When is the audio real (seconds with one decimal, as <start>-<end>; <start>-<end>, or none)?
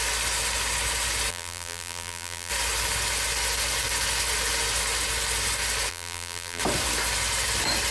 0.0-1.3; 2.5-5.9; 6.6-7.9